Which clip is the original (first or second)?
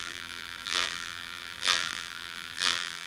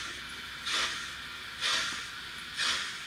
second